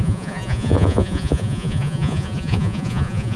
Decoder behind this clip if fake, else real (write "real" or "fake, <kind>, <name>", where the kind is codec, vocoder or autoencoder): fake, vocoder, Vocos